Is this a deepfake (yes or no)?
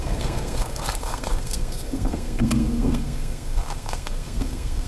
yes